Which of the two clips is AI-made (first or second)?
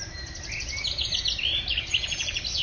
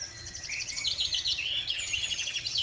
second